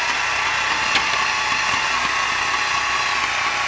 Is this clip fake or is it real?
real